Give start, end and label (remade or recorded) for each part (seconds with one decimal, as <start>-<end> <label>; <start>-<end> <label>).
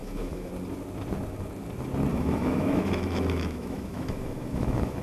0.0-0.5 remade; 0.5-2.1 recorded; 2.1-5.0 remade